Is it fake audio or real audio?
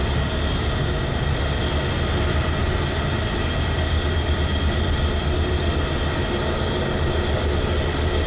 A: real